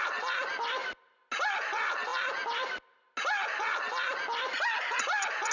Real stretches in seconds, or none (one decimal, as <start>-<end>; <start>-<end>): 0.0-5.5

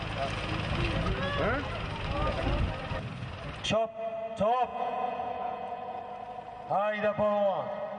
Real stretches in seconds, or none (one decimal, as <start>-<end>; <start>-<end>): 0.0-4.7; 6.0-8.0

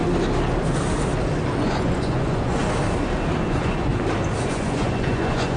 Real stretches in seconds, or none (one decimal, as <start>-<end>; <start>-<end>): 0.0-1.6; 2.6-3.4; 3.9-4.4

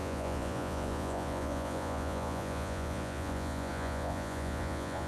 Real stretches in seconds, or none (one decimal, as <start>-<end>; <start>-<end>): none

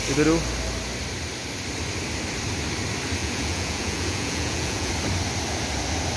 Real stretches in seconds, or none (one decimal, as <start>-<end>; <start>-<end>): 0.0-3.2; 4.9-6.2

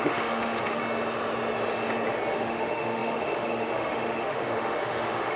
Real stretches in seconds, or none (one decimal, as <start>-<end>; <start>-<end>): 0.8-2.3

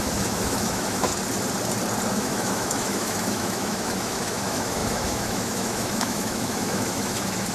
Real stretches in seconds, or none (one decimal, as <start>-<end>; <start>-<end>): 1.1-2.1

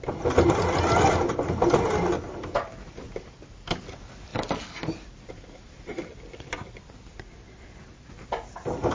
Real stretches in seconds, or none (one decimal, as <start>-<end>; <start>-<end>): 0.0-4.3; 7.8-8.9